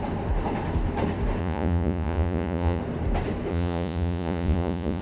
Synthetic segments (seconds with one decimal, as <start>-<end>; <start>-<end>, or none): 1.4-2.8; 3.5-5.0